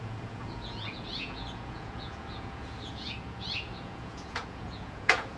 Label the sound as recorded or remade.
remade